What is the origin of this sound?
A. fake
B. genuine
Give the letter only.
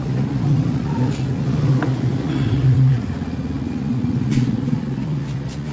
A